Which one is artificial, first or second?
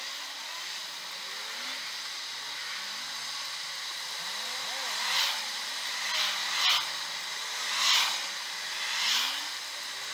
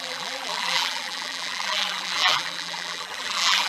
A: second